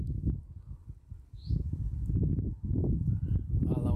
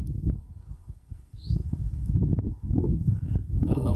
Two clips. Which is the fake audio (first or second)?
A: second